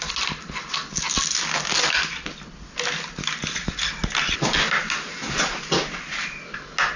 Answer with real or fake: real